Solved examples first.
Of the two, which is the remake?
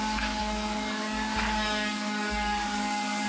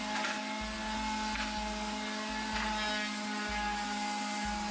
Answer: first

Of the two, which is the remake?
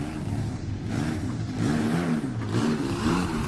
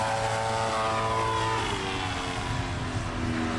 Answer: first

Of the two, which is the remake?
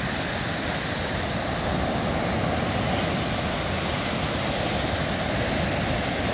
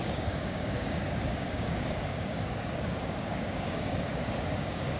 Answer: second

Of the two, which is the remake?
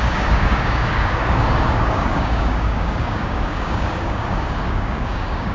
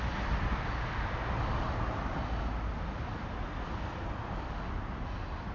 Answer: first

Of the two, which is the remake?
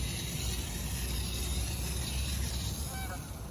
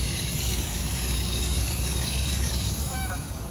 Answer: second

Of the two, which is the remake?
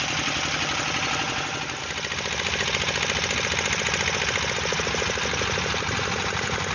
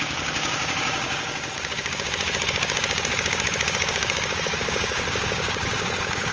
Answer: second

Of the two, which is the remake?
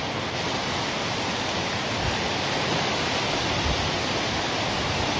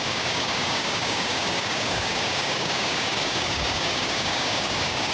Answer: second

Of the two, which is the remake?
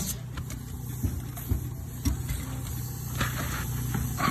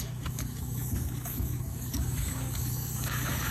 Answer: second